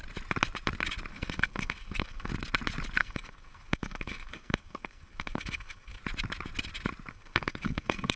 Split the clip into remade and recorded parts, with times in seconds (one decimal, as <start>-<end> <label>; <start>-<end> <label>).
0.0-1.1 recorded; 1.1-2.3 remade; 2.3-3.0 recorded; 3.0-6.0 remade; 6.0-7.1 recorded; 7.1-8.2 remade